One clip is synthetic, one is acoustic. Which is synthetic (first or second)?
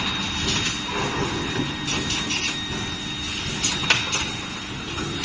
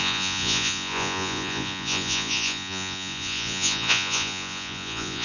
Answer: second